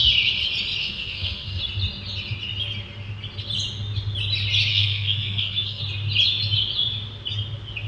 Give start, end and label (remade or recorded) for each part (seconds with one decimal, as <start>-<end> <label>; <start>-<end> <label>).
0.0-0.8 recorded; 0.8-1.6 remade; 1.6-4.7 recorded; 4.7-5.8 remade; 5.8-7.9 recorded